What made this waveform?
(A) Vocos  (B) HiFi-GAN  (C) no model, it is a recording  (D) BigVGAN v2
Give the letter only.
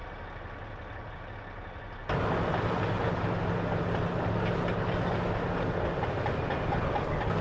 C